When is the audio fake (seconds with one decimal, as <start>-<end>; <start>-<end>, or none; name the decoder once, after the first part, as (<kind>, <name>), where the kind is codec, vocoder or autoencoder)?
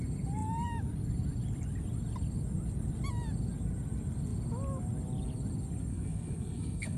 5.9-7.0 (codec, SNAC)